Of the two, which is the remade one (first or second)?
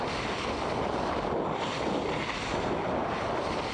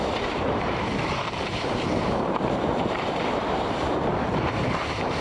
second